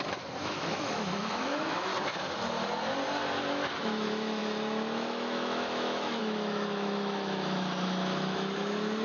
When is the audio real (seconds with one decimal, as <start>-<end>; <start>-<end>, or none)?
1.9-3.5